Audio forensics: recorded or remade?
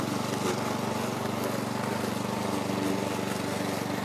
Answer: recorded